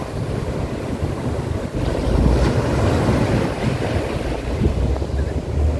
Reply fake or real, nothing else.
real